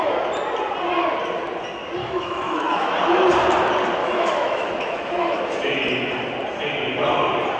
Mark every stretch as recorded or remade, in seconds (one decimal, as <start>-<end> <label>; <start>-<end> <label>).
0.0-2.0 recorded; 2.0-2.9 remade; 2.9-4.0 recorded; 4.0-5.4 remade; 5.4-7.6 recorded